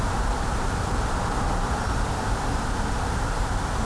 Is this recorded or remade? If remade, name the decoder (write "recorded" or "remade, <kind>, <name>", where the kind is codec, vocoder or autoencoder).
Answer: recorded